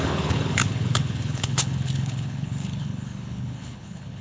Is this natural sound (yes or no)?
no